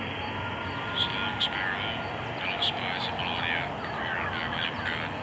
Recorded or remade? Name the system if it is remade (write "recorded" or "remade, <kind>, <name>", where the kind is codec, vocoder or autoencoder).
recorded